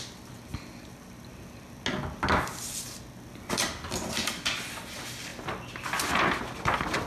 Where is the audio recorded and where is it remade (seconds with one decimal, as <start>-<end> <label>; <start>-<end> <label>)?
0.0-7.1 recorded